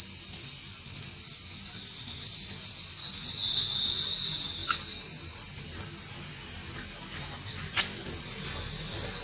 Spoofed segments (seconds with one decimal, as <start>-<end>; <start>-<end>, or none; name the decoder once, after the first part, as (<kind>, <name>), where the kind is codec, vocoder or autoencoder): none